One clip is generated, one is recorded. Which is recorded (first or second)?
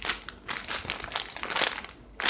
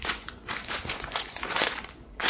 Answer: first